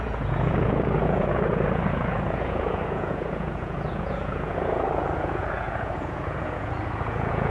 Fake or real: fake